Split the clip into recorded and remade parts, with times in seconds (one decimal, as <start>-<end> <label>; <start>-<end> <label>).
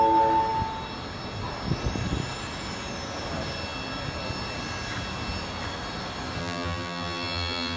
0.0-6.4 recorded; 6.4-7.8 remade